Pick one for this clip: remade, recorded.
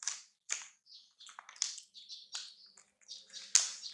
recorded